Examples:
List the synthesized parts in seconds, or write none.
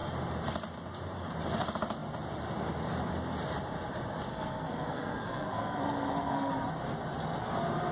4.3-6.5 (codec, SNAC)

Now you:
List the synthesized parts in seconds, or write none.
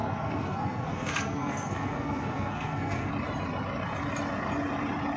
0.0-3.1 (codec, SNAC)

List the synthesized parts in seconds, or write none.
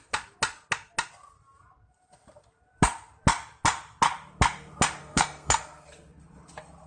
5.0-5.6 (codec, SNAC)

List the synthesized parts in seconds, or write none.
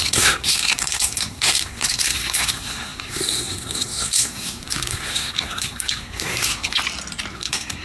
0.0-6.8 (codec, SNAC); 7.3-7.8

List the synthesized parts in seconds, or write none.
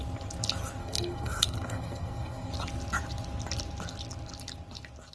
0.8-2.5 (codec, SNAC)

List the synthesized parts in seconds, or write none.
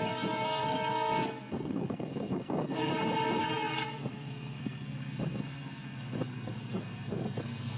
0.0-2.9 (codec, SNAC); 3.4-7.8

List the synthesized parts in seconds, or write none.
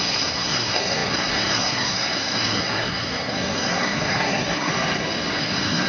0.0-4.7 (codec, SNAC); 5.4-5.9